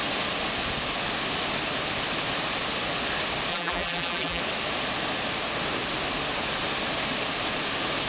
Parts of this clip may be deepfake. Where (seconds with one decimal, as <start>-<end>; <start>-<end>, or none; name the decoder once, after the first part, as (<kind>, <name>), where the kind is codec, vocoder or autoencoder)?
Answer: 3.5-4.4 (vocoder, BigVGAN v2)

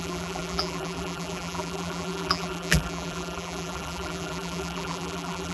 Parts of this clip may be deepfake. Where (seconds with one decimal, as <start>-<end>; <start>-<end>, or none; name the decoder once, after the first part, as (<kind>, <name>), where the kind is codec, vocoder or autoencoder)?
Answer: 0.0-5.5 (vocoder, BigVGAN v2)